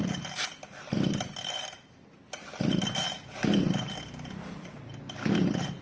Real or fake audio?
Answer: real